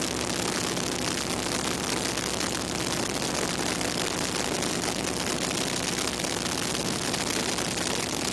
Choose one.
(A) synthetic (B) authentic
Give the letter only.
B